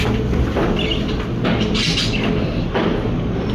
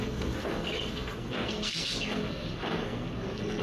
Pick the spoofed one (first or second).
second